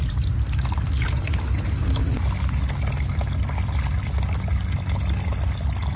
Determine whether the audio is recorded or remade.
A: recorded